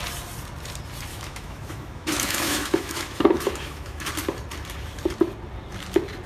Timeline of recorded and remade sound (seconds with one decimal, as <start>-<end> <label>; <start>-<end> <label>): 0.0-1.1 recorded; 1.1-4.1 remade; 4.1-6.3 recorded